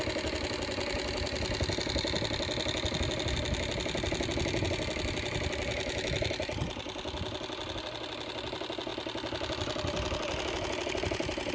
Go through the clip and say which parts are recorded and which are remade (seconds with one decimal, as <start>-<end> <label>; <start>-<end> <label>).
0.0-8.9 recorded; 8.9-11.5 remade